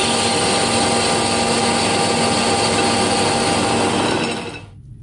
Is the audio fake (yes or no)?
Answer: no